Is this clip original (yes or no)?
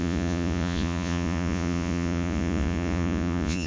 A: no